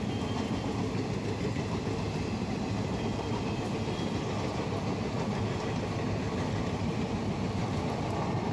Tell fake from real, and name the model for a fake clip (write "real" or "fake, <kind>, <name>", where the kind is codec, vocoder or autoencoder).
real